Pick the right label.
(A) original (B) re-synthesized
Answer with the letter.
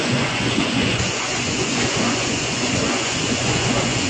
B